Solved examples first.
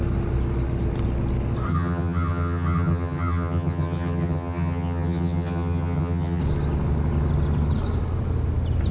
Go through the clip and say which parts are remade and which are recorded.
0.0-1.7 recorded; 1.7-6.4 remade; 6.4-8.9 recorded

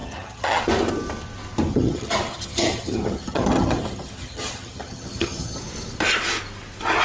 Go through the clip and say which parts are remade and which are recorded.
0.0-0.6 remade; 0.6-1.7 recorded; 1.7-5.6 remade; 5.6-7.0 recorded